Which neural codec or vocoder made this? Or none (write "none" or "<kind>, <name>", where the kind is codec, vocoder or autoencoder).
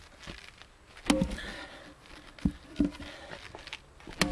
none